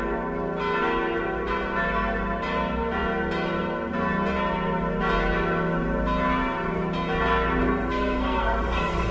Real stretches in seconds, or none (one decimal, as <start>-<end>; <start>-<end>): 0.0-7.6